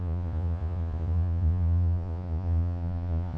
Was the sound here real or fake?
fake